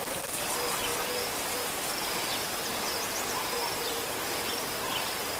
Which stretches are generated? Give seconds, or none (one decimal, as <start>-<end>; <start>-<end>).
none